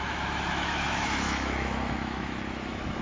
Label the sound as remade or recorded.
remade